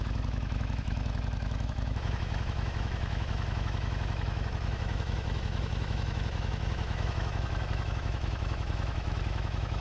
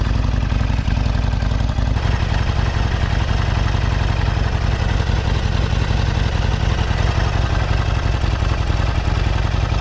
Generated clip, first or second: first